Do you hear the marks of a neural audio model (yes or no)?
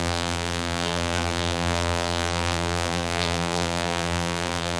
yes